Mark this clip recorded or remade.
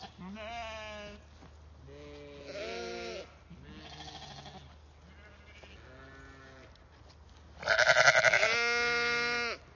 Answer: recorded